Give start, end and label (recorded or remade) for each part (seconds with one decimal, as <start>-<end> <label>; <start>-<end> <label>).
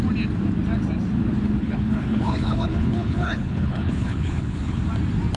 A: 0.0-1.6 recorded; 1.6-4.8 remade; 4.8-5.4 recorded